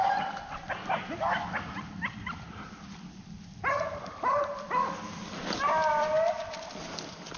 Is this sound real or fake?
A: real